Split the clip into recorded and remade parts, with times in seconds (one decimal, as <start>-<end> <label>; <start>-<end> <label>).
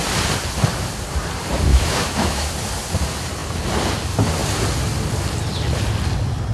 0.0-1.7 recorded; 1.7-2.5 remade; 2.5-6.5 recorded